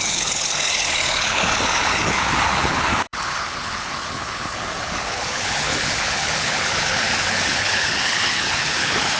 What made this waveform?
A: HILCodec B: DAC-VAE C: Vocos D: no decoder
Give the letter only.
A